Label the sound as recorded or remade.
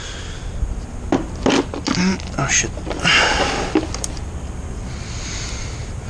recorded